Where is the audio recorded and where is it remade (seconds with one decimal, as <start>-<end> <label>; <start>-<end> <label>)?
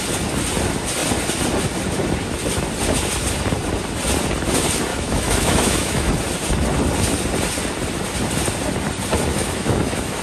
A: 0.0-4.9 recorded; 4.9-6.1 remade; 6.1-9.3 recorded; 9.3-10.2 remade